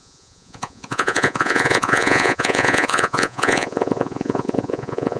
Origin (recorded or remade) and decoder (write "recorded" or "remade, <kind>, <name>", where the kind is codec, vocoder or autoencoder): remade, vocoder, Vocos